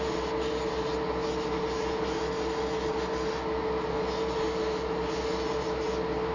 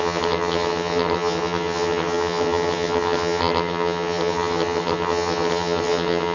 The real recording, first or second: first